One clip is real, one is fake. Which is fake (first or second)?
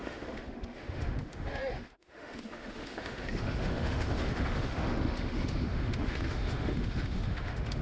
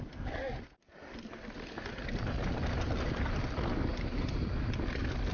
first